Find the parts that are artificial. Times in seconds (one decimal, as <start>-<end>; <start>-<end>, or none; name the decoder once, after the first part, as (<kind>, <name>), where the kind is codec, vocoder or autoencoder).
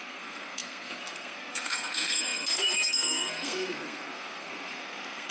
0.0-5.3 (codec, SNAC)